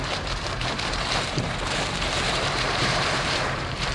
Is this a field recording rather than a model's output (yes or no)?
no